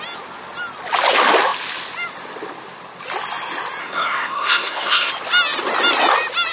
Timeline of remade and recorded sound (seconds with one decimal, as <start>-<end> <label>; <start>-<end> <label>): 0.0-3.8 recorded; 3.8-5.1 remade; 5.1-6.5 recorded